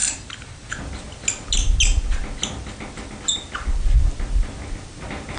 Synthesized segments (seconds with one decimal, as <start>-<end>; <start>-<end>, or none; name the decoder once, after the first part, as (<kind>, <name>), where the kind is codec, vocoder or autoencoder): 0.0-0.7 (vocoder, BigVGAN v2)